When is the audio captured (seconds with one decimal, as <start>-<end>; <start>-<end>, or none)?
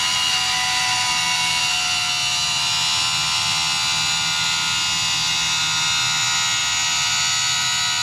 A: 0.0-8.0